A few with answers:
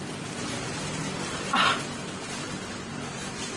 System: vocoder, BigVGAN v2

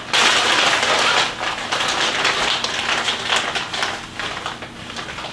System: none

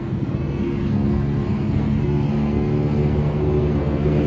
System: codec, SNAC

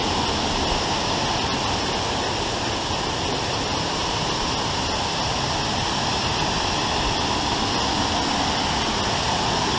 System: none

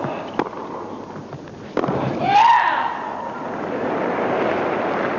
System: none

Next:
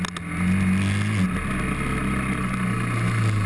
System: none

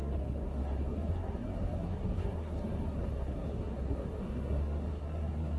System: codec, SNAC